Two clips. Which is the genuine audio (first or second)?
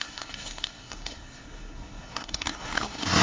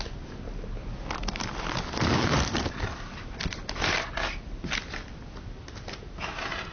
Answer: second